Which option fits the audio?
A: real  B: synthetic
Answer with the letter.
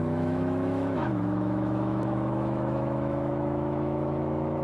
B